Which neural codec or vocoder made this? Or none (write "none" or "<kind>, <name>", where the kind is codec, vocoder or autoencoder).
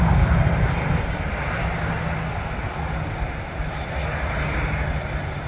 none